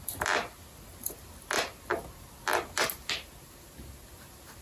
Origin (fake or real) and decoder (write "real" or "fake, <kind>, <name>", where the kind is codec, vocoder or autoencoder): real